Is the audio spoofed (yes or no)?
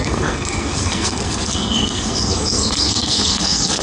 yes